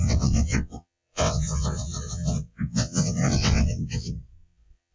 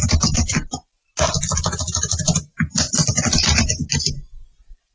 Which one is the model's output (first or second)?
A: first